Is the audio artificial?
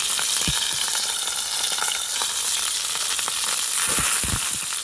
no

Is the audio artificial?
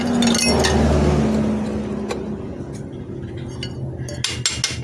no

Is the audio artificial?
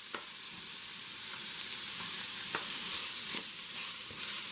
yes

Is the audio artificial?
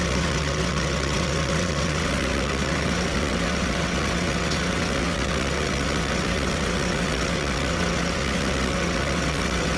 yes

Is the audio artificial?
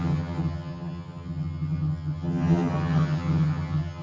yes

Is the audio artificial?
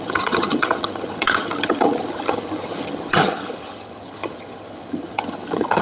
yes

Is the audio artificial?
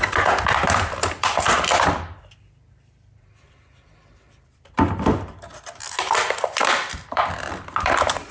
yes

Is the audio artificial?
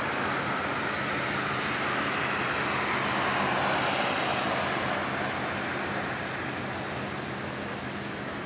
no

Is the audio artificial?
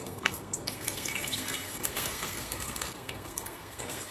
yes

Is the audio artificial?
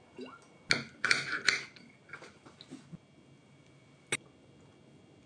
no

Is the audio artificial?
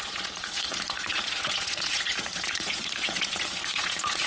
yes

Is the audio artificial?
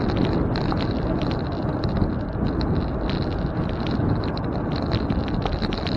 no